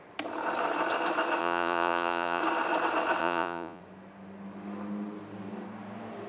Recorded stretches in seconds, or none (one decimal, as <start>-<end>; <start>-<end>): 0.0-1.4; 2.4-3.2; 3.8-6.3